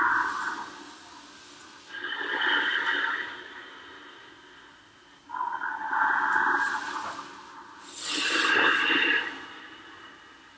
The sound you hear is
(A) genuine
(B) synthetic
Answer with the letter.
A